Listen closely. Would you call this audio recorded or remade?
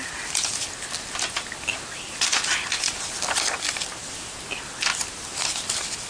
recorded